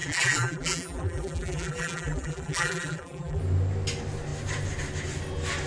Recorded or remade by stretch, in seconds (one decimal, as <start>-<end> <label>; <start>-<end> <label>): 0.0-3.4 remade; 3.4-5.7 recorded